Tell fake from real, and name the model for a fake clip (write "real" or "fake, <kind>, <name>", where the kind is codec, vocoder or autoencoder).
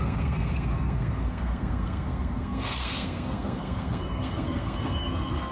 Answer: fake, codec, SNAC